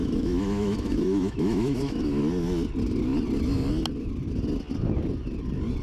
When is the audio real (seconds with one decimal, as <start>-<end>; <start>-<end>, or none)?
2.2-5.8